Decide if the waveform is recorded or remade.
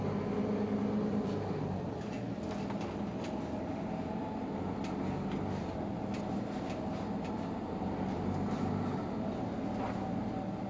recorded